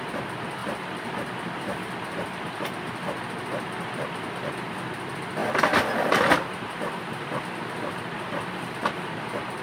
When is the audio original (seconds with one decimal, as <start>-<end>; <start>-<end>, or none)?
0.0-9.6